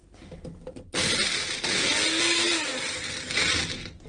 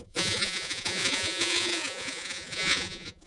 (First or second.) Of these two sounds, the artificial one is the second